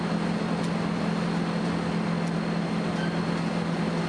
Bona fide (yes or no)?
yes